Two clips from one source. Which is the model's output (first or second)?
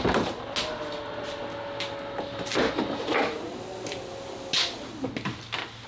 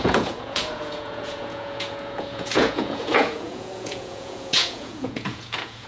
second